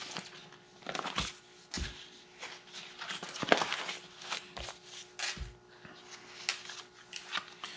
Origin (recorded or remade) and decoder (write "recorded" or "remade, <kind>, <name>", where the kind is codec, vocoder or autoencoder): recorded